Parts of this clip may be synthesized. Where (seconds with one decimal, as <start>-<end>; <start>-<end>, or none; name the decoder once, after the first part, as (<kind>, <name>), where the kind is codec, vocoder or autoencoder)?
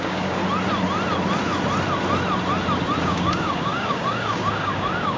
0.0-0.4 (codec, DAC); 3.0-5.2